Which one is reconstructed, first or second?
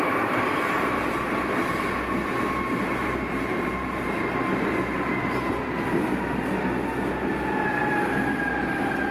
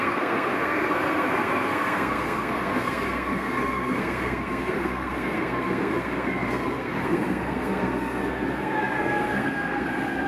second